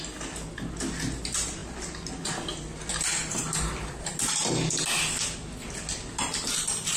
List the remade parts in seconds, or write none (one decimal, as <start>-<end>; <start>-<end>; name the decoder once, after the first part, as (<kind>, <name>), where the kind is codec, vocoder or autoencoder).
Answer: none